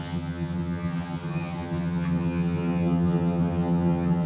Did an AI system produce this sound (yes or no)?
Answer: yes